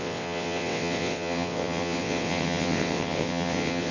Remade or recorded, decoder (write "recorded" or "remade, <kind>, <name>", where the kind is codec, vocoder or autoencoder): remade, vocoder, WaveNeXt